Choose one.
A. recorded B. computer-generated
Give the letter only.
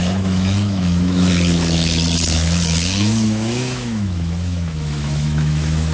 B